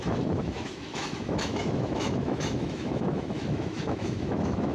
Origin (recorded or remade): remade